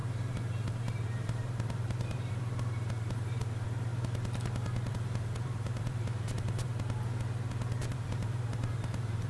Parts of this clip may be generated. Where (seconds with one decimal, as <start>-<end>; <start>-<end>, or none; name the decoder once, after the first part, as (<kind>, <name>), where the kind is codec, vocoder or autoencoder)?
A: 0.0-3.9 (vocoder, BigVGAN v2); 4.9-6.7; 7.8-9.3